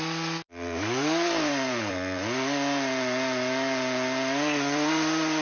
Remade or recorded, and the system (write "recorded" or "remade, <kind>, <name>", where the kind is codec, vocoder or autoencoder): remade, vocoder, BigVGAN v2